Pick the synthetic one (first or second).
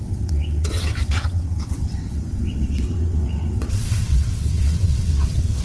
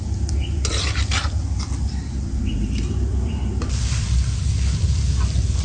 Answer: first